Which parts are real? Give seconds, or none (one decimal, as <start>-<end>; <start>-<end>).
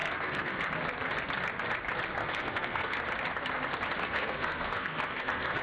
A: 0.7-2.2; 3.0-4.0